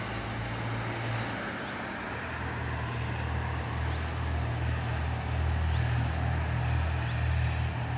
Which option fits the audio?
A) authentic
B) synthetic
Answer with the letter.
A